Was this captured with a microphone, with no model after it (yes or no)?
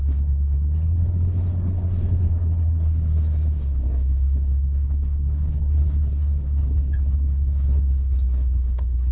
no